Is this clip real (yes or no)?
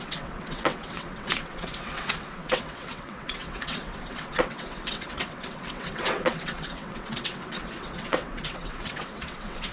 no